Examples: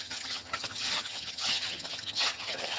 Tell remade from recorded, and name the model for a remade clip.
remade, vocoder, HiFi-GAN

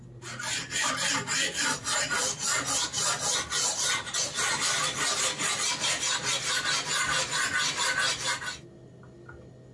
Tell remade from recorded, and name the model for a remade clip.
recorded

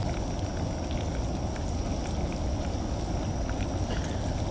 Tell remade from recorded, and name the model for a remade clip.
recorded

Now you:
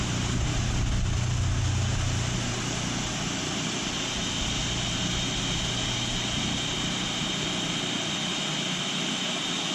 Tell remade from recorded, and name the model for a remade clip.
recorded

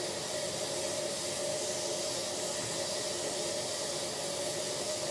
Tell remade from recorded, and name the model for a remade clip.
recorded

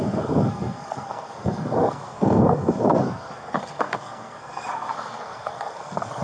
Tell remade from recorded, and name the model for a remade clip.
remade, codec, SNAC